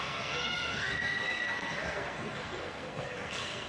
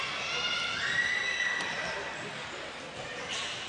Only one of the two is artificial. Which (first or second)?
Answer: first